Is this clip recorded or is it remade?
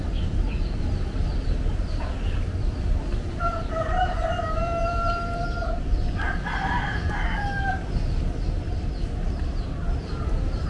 remade